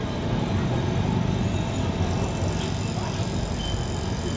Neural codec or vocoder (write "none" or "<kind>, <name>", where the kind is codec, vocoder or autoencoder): none